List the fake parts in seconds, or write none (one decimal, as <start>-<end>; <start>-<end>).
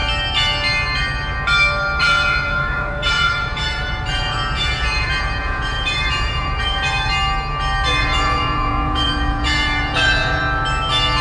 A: 2.0-7.1; 8.0-10.4